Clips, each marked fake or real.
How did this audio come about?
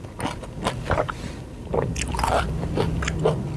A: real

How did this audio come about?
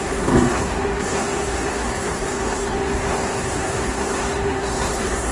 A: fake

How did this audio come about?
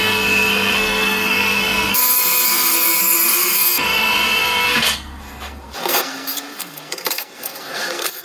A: fake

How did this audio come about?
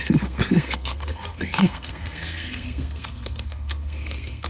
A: fake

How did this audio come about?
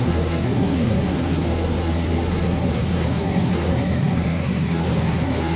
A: fake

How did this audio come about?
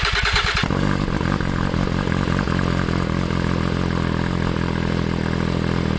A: real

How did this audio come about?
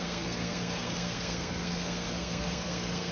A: fake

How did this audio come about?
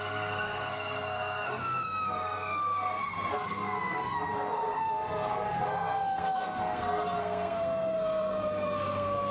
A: fake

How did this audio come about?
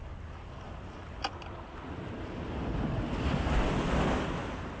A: real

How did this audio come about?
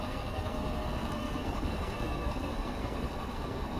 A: fake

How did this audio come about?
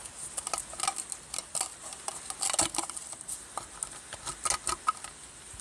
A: real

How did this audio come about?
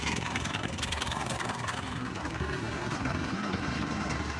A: fake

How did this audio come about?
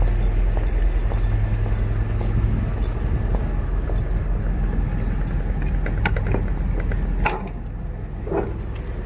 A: real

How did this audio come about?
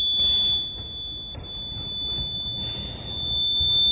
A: real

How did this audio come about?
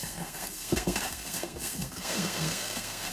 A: fake